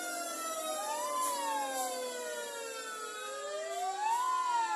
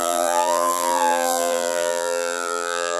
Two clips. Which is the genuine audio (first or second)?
first